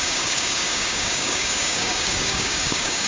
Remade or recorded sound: remade